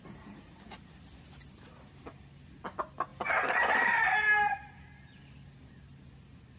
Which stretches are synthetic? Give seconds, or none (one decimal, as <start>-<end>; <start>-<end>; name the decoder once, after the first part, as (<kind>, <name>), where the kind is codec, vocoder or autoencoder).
3.1-4.5 (vocoder, BigVGAN v2)